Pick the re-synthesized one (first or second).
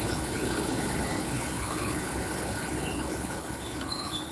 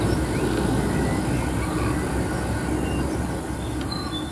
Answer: first